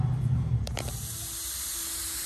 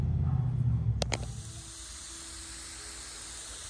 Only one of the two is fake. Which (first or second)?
first